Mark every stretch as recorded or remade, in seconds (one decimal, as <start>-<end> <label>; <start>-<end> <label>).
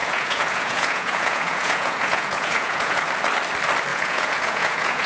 0.0-3.1 remade; 3.1-3.9 recorded; 3.9-5.1 remade